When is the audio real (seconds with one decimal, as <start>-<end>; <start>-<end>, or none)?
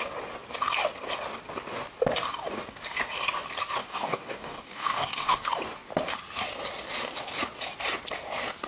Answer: 0.0-3.8; 5.5-8.7